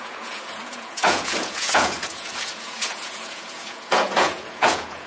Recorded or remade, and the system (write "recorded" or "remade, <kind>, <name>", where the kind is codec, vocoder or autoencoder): remade, vocoder, Vocos